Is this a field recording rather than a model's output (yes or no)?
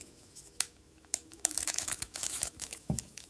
no